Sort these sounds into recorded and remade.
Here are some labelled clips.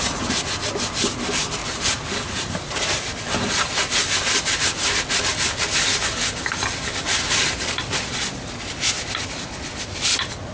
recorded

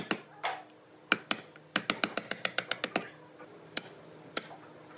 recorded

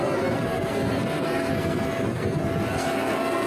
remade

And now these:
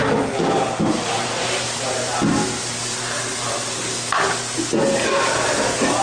recorded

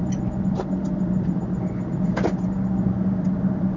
recorded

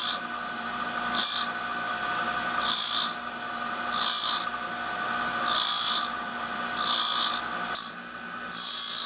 recorded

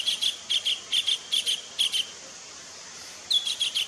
recorded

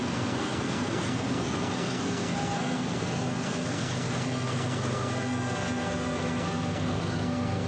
remade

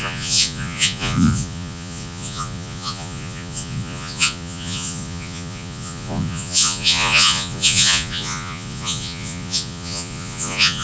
remade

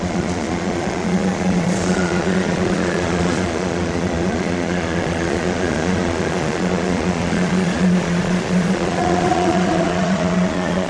remade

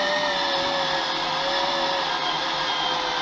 recorded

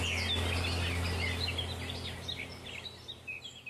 recorded